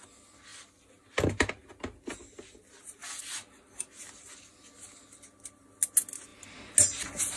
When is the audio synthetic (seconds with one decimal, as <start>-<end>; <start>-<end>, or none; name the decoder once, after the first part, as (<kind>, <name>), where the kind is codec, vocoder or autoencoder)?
none